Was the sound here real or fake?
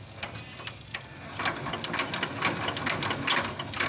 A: real